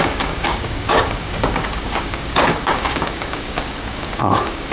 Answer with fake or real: fake